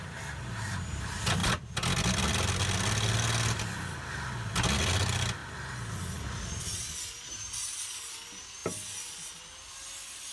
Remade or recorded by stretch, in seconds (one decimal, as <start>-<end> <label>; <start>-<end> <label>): 0.0-10.3 recorded